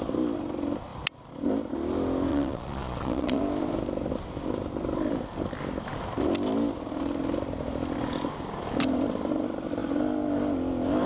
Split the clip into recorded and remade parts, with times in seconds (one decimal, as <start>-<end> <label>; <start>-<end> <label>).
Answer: 0.0-2.3 recorded; 2.3-3.4 remade; 3.4-11.1 recorded